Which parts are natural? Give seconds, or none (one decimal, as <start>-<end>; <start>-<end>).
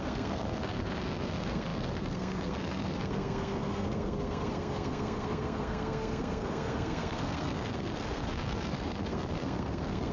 none